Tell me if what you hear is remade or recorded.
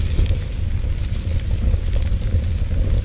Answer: recorded